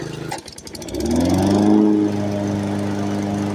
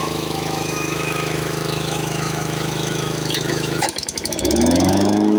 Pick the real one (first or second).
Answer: first